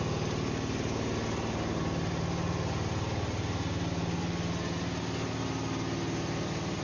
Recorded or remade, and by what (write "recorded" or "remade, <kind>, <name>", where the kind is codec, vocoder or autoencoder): recorded